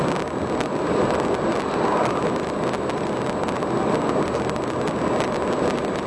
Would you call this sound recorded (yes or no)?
yes